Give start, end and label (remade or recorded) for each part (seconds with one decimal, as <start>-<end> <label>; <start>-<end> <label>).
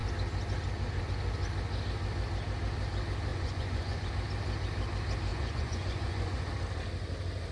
0.0-3.3 recorded; 3.3-4.1 remade; 4.1-5.3 recorded; 5.3-6.5 remade; 6.5-7.5 recorded